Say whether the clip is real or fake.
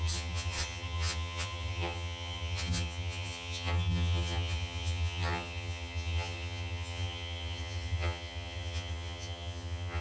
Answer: fake